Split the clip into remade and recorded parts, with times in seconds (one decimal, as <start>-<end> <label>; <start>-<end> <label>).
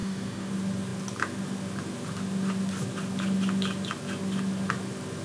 0.0-0.5 remade; 0.5-5.2 recorded